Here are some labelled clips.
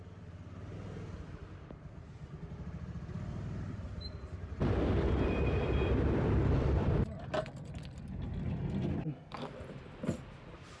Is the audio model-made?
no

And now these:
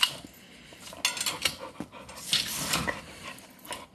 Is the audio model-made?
no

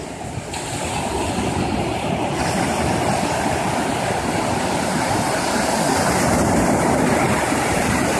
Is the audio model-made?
no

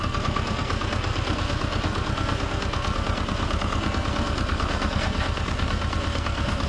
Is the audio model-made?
yes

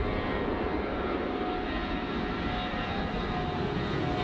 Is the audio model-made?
no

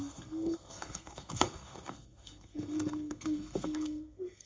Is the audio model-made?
yes